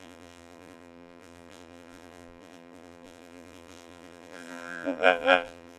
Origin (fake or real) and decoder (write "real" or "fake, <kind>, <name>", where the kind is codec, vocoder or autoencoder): fake, vocoder, BigVGAN v2